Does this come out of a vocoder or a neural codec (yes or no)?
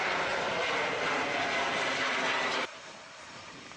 no